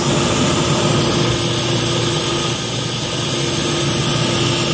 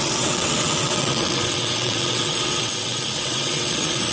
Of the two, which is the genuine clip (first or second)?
first